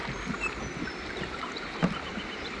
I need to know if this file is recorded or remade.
recorded